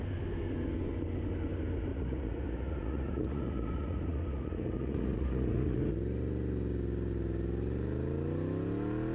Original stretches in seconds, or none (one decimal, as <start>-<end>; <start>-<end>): 0.0-1.9; 5.8-9.1